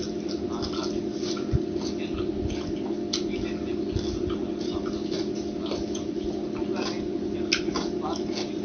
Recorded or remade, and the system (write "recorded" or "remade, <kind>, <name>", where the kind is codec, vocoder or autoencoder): recorded